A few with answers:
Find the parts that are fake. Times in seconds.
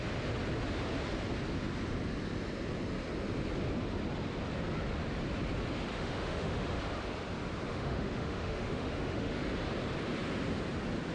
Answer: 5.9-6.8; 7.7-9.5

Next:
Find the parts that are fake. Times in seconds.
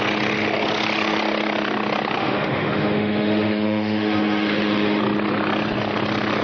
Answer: 2.2-5.0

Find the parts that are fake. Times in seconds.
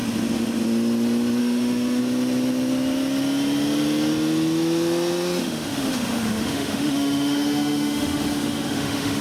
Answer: 1.4-2.0; 5.4-9.2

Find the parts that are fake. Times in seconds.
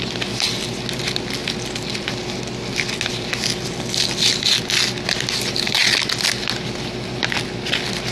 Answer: none